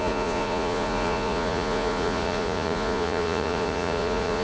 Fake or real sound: fake